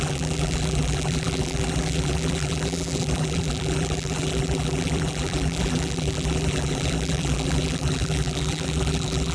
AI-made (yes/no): yes